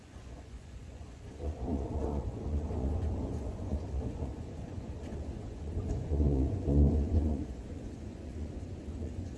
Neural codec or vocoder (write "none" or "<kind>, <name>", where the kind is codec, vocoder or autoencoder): vocoder, Vocos